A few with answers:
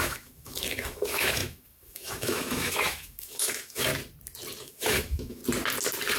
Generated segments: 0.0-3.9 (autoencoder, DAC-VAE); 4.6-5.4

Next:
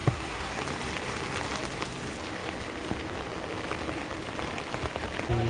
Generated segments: 0.0-0.6 (codec, SNAC)

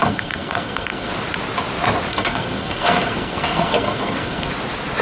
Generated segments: 0.0-1.1 (codec, SNAC); 2.1-4.5

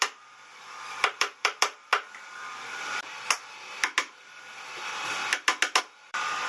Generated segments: 0.0-1.9 (vocoder, BigVGAN v2); 5.8-6.5